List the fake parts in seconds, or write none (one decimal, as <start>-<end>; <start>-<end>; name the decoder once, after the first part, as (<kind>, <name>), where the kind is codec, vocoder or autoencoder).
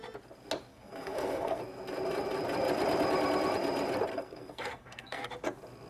0.7-1.6 (codec, SNAC); 4.1-5.3